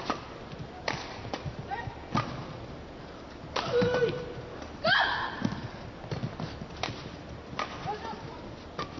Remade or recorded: recorded